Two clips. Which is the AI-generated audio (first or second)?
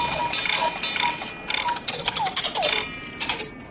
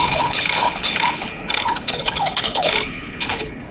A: second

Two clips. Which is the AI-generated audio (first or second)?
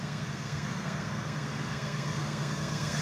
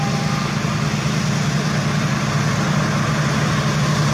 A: first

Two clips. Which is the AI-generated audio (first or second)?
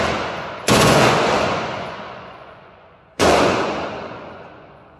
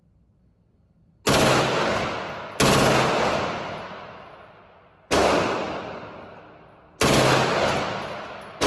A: first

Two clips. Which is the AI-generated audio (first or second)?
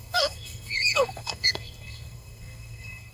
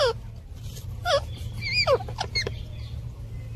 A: first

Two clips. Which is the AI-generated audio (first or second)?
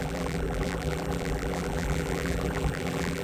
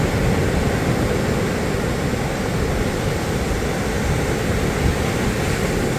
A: first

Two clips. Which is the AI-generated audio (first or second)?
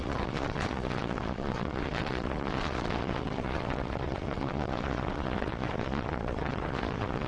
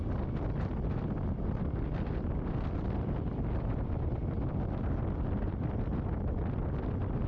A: first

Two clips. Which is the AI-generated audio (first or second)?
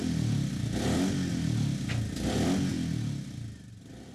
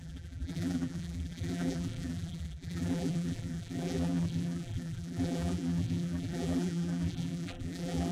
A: second